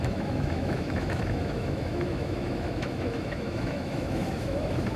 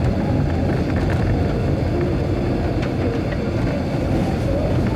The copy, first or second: first